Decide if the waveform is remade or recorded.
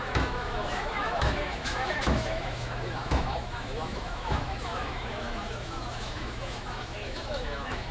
remade